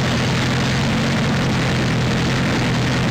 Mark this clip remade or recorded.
recorded